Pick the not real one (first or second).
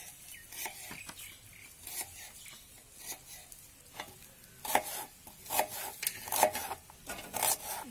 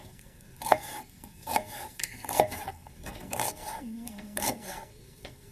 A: second